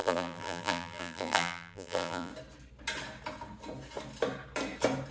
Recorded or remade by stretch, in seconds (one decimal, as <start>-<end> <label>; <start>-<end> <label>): 0.0-2.3 remade; 2.3-5.1 recorded